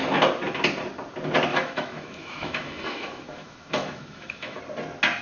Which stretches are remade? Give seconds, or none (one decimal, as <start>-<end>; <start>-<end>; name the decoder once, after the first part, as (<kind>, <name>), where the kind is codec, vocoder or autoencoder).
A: 1.5-4.6 (autoencoder, DAC-VAE)